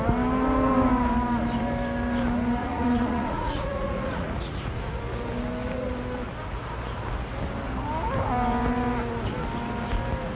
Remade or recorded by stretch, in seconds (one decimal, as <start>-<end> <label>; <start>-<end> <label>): 0.0-2.6 recorded; 2.6-4.9 remade; 4.9-10.3 recorded